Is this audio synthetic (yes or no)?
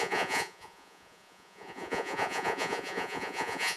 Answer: yes